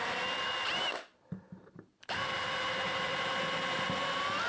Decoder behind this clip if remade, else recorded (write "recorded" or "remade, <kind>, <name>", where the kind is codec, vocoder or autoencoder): recorded